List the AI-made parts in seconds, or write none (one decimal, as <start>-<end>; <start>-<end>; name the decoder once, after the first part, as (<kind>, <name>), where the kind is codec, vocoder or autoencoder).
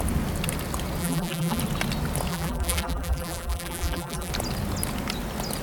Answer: 1.0-1.6 (vocoder, BigVGAN v2); 2.3-4.3